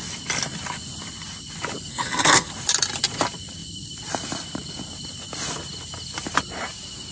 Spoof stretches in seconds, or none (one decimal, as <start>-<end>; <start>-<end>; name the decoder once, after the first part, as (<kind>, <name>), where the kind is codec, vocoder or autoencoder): 1.9-2.5 (codec, SNAC)